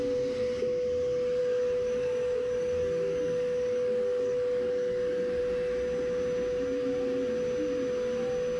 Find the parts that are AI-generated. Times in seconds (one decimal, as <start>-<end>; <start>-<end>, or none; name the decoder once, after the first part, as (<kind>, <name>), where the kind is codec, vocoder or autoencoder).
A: 1.4-5.4 (codec, DAC)